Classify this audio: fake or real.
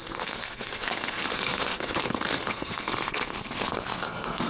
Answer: fake